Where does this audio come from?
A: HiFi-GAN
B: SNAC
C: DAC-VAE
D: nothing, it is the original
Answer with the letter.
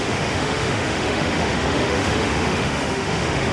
C